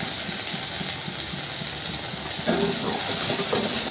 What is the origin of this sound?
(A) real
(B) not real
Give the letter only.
A